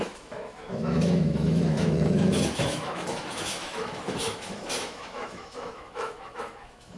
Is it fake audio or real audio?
fake